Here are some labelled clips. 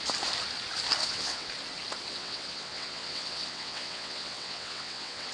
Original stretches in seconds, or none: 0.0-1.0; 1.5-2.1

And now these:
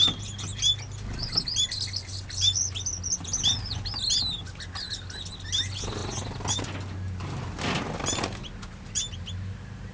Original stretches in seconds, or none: 0.0-9.9